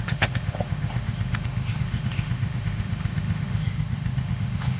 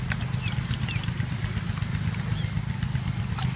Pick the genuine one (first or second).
second